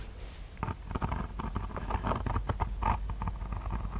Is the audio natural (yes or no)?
yes